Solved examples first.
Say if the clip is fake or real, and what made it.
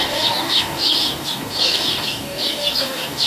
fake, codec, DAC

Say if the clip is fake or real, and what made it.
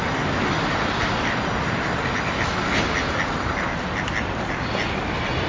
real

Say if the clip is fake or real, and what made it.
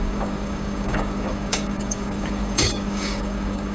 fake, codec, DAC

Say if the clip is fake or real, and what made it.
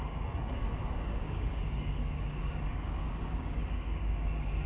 fake, codec, DAC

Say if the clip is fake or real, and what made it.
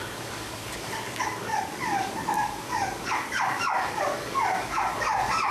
fake, codec, DAC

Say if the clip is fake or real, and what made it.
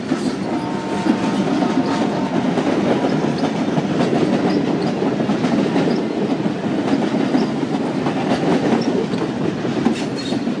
real